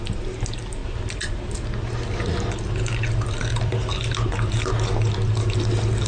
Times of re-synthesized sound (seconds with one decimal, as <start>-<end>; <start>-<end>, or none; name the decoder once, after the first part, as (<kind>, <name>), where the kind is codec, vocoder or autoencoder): none